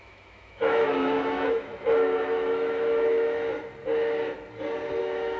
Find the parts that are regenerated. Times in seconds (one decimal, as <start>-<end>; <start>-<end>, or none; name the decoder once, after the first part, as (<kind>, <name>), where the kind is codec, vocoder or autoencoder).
0.0-1.7 (autoencoder, DAC-VAE); 2.2-3.5; 5.0-5.4